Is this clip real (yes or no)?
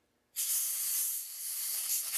yes